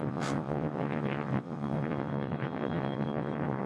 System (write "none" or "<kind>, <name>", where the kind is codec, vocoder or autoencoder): vocoder, WaveNeXt